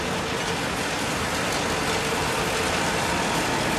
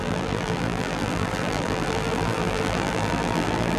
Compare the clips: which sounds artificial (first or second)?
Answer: second